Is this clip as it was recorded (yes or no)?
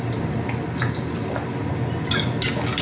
yes